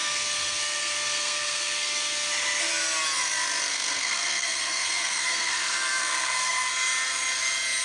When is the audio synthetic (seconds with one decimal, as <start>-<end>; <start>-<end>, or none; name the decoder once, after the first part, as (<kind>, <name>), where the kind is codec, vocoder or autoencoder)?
0.0-2.3 (codec, SNAC); 3.7-6.7